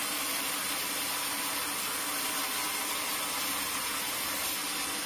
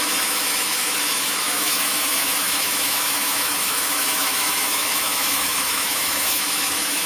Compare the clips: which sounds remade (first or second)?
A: second